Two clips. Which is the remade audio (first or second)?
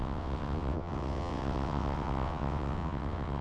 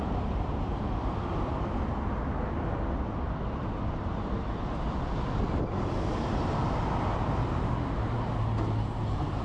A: first